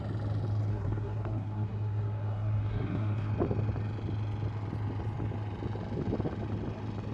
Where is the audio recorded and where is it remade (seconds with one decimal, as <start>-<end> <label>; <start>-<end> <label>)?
0.0-0.7 recorded; 0.7-3.3 remade; 3.3-7.1 recorded